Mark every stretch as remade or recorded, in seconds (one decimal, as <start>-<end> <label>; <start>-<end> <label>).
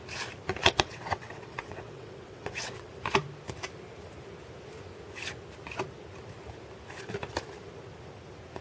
0.0-0.6 recorded; 0.6-2.9 remade; 2.9-8.6 recorded